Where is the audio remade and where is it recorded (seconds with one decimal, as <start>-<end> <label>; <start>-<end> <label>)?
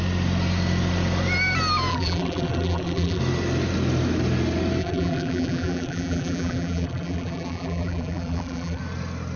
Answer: 0.0-1.9 recorded; 1.9-3.2 remade; 3.2-4.8 recorded; 4.8-8.8 remade; 8.8-9.4 recorded